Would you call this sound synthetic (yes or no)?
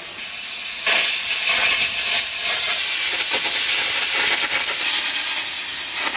no